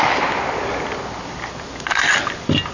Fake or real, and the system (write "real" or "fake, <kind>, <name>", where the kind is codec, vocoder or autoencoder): real